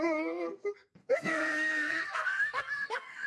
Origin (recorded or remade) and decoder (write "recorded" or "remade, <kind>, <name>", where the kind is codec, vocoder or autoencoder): remade, codec, SNAC